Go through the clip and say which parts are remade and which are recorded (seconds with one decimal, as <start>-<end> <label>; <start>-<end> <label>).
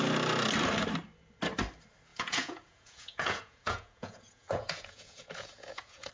0.0-2.1 recorded; 2.1-6.1 remade